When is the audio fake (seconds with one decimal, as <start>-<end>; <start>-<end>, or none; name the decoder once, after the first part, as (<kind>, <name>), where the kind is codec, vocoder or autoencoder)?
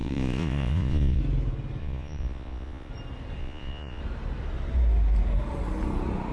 0.0-1.2 (vocoder, Vocos); 1.8-2.9; 3.4-4.0